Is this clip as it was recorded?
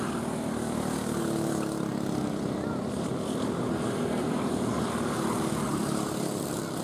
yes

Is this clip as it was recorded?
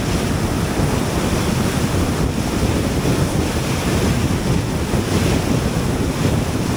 yes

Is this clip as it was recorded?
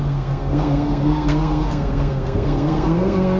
no